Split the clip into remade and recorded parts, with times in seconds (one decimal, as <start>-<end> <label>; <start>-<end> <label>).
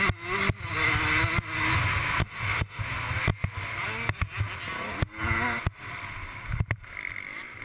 0.0-2.2 recorded; 2.2-2.8 remade; 2.8-7.6 recorded